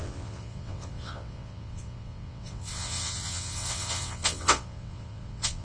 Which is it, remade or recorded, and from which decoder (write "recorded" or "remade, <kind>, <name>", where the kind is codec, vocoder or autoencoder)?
remade, vocoder, WaveNeXt